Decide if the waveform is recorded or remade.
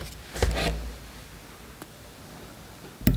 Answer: recorded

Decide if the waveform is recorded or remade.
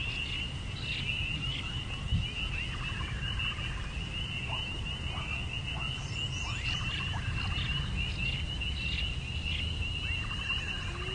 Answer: recorded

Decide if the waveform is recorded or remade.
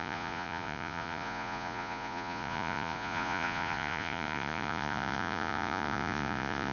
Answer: remade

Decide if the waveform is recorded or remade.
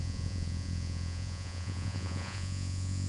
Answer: remade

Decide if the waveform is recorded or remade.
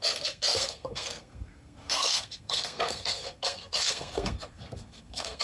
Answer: remade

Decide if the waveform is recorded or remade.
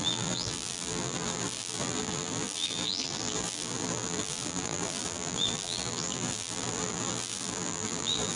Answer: remade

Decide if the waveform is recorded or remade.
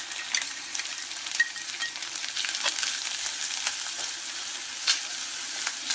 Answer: remade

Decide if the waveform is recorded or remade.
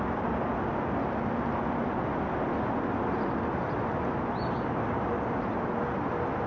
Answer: recorded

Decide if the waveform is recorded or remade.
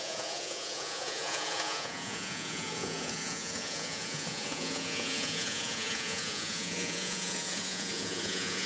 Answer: remade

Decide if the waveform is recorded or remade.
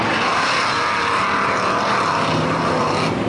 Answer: recorded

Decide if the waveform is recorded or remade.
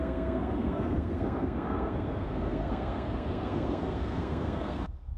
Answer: remade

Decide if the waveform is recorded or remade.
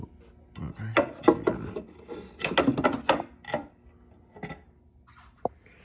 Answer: recorded